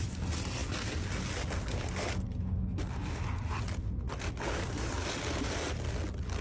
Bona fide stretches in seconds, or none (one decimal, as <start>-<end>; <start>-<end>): 0.0-6.4